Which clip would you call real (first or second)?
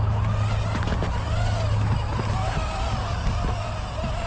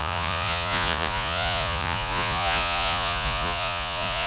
first